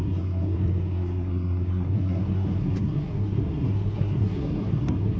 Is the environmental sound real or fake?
fake